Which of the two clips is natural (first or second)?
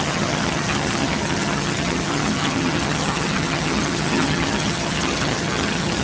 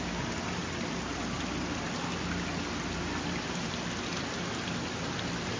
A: second